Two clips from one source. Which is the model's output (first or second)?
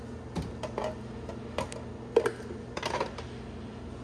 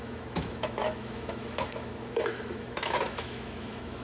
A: second